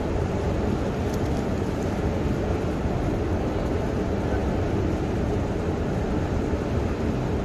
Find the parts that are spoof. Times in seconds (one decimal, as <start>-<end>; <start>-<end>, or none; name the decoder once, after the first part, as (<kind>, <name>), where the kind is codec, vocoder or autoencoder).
none